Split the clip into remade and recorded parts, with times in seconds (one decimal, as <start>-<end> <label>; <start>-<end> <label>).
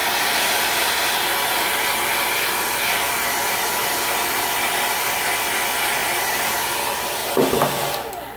0.0-0.6 remade; 0.6-8.4 recorded